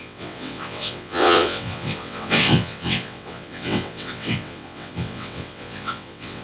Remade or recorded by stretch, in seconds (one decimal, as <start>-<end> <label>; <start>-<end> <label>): 0.0-6.4 remade